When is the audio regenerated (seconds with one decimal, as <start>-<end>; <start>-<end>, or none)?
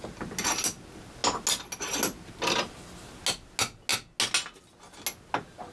none